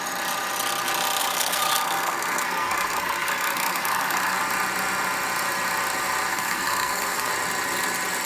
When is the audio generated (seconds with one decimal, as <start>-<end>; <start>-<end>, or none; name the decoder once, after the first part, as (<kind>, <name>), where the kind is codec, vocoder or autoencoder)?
1.2-4.4 (codec, SNAC); 6.3-7.3